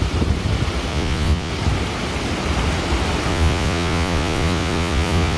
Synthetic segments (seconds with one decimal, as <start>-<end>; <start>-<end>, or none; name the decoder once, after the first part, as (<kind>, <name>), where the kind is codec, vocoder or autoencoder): 0.9-1.5 (vocoder, Vocos); 3.3-5.4